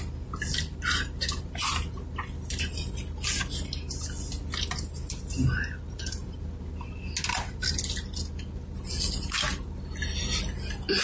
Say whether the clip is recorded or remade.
recorded